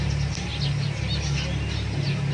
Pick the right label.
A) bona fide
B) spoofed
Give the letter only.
A